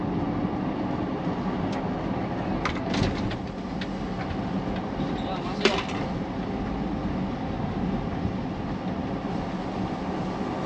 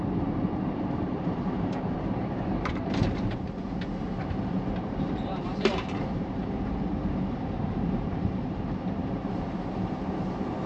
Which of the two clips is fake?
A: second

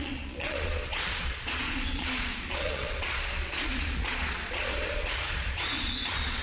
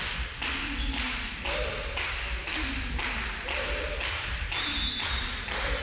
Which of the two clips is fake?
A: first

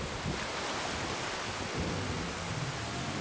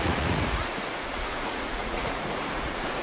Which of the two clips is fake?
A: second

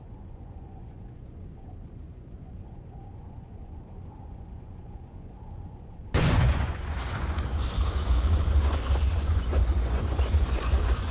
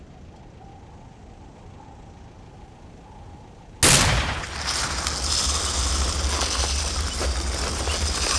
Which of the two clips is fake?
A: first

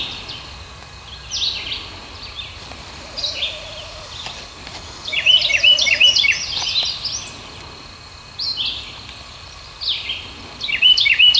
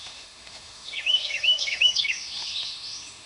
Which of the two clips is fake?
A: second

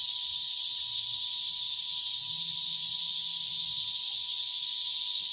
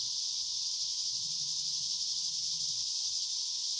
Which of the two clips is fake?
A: second